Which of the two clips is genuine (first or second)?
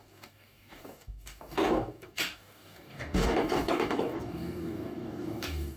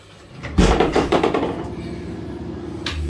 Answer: second